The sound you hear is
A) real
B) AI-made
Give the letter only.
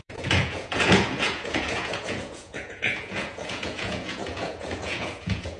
B